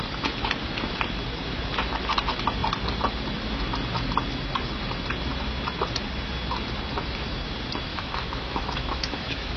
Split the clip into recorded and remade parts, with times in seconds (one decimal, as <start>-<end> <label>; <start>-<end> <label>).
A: 0.0-7.9 recorded; 7.9-9.6 remade